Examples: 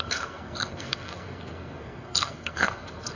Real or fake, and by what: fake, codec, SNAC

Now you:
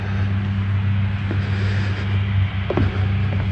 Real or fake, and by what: real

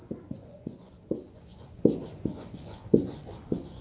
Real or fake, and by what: fake, vocoder, Vocos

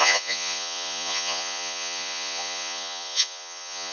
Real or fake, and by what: fake, vocoder, Vocos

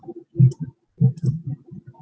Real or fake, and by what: real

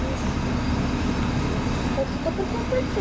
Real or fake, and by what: real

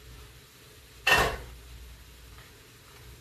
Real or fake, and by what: real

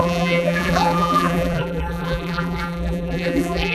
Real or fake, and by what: fake, vocoder, BigVGAN v2